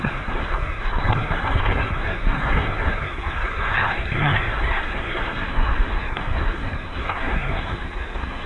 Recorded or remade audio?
remade